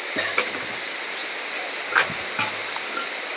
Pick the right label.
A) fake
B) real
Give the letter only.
B